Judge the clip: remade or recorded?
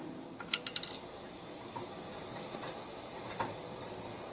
recorded